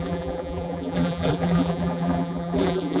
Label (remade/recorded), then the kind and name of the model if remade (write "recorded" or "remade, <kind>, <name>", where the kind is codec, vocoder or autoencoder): remade, vocoder, BigVGAN v2